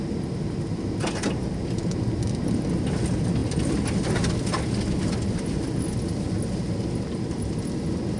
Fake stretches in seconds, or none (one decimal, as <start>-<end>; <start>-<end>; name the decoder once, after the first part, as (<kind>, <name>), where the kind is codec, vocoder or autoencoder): none